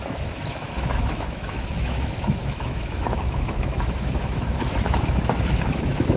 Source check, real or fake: fake